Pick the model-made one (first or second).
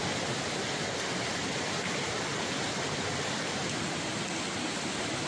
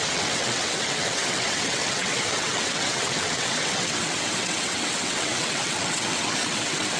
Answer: second